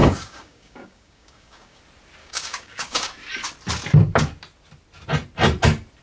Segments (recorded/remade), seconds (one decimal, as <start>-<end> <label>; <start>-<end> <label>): 0.0-1.8 remade; 1.8-2.2 recorded; 2.2-3.1 remade; 3.1-6.0 recorded